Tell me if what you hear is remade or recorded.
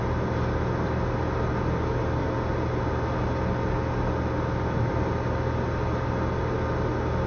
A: recorded